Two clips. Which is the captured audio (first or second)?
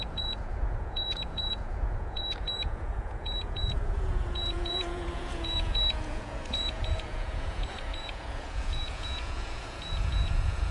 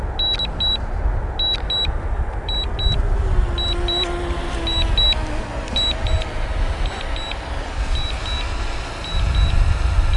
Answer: second